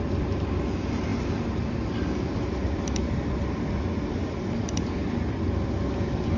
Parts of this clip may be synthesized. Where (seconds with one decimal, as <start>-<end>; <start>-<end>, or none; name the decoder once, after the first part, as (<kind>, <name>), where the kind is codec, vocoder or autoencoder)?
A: none